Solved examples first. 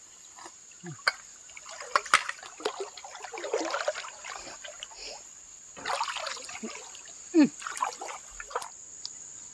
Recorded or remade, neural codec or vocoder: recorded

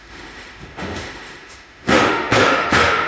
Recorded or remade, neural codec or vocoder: remade, autoencoder, DAC-VAE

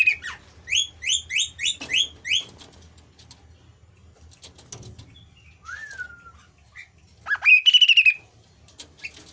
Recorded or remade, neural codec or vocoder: recorded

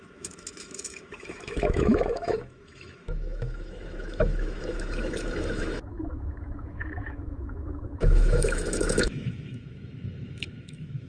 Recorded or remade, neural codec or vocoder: remade, autoencoder, DAC-VAE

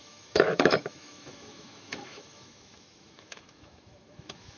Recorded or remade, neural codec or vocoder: remade, autoencoder, DAC-VAE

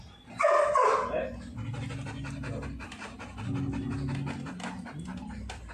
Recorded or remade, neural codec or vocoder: recorded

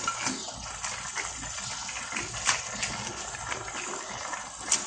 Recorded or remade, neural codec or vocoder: recorded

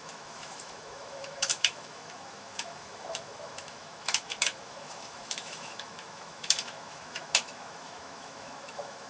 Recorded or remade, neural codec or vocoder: remade, autoencoder, DAC-VAE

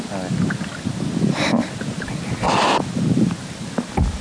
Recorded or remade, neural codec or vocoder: recorded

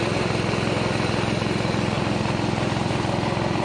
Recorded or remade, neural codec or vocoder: recorded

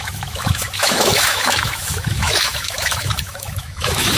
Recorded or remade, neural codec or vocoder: remade, autoencoder, DAC-VAE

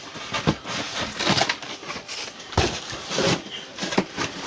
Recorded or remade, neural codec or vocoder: recorded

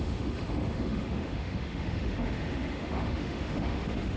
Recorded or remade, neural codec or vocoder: remade, autoencoder, DAC-VAE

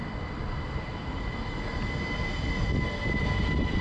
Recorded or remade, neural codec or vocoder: recorded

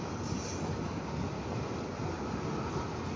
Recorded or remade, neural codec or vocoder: recorded